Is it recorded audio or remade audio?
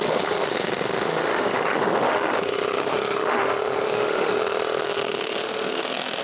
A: remade